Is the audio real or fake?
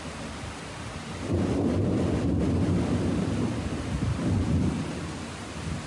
real